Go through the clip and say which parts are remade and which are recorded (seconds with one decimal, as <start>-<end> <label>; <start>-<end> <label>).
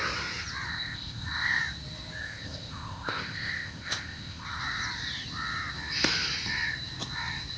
0.0-0.7 recorded; 0.7-1.6 remade; 1.6-2.2 recorded; 2.2-4.6 remade; 4.6-7.6 recorded